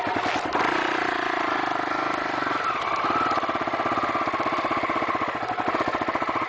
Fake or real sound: real